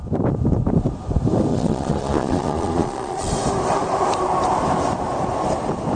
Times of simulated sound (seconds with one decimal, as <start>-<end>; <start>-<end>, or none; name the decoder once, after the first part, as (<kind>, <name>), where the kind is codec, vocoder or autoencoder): 1.5-3.3 (vocoder, Vocos)